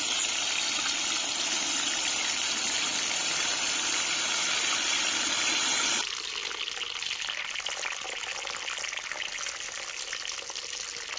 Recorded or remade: recorded